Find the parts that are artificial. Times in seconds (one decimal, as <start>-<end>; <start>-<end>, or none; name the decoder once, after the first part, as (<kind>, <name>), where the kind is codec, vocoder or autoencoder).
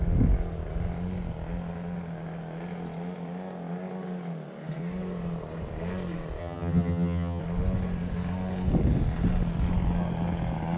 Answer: 6.4-7.4 (vocoder, HiFi-GAN)